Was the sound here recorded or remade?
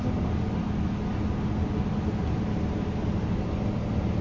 recorded